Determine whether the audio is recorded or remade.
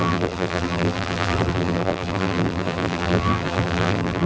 remade